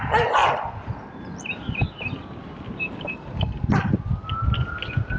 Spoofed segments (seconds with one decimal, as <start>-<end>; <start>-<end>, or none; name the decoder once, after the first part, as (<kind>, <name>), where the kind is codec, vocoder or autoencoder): none